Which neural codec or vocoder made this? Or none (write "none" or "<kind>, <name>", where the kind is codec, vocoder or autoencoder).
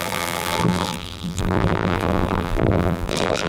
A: vocoder, BigVGAN v2